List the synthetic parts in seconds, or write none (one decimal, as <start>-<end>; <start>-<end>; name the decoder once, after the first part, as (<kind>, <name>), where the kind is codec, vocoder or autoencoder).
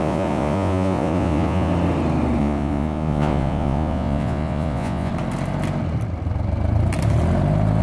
0.0-1.7 (vocoder, Vocos); 2.4-5.1